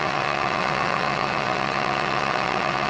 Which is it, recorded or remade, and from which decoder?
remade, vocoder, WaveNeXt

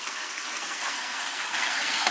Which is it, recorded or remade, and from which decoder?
remade, codec, SNAC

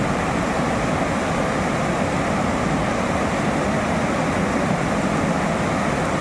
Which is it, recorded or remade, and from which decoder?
recorded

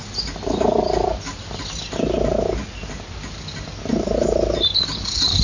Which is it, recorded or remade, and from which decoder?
recorded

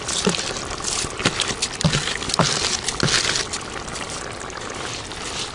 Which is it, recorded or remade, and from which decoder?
recorded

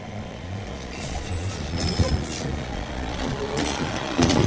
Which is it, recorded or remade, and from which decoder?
remade, vocoder, Vocos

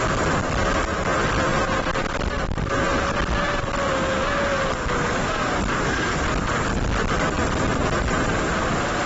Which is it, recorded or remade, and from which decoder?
recorded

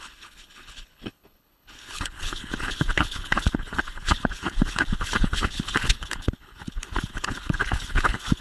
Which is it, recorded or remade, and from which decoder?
remade, codec, HILCodec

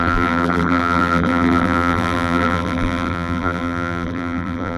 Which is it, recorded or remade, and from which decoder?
remade, vocoder, BigVGAN v2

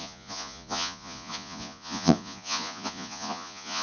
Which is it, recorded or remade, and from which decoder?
remade, vocoder, Vocos